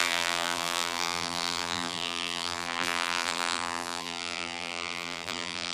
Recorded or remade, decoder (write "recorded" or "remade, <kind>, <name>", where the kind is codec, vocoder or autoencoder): remade, vocoder, BigVGAN v2